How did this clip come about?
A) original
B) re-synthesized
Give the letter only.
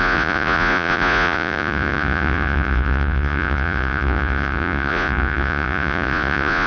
B